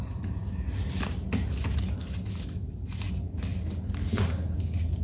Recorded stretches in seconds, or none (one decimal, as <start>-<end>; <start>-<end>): 0.0-5.0